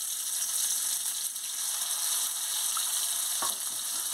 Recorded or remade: recorded